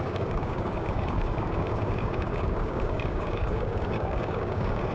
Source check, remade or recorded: remade